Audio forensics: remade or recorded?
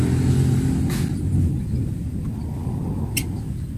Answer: recorded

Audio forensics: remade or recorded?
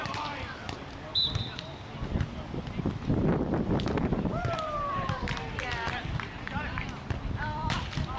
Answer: remade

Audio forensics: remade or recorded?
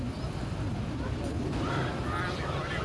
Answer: recorded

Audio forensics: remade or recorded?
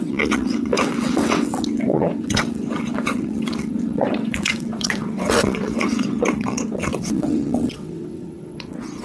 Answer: remade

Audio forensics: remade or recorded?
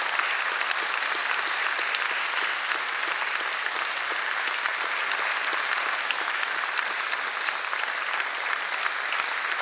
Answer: recorded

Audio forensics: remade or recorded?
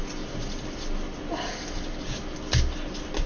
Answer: recorded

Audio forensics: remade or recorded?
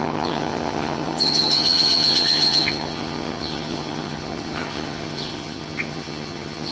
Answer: remade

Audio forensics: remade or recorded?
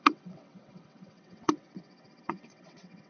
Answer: remade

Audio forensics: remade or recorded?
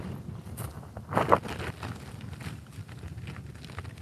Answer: recorded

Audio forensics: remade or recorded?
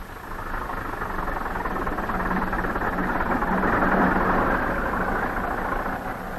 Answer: recorded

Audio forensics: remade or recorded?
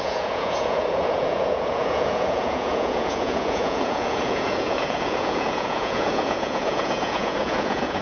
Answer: remade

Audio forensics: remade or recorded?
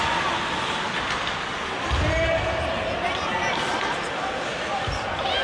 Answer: recorded